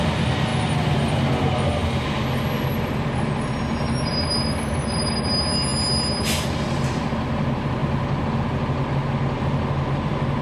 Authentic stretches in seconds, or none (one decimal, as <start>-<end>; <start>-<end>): 0.0-10.4